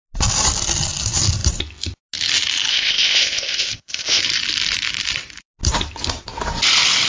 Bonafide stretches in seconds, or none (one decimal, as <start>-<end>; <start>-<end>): 0.0-2.7; 4.2-7.1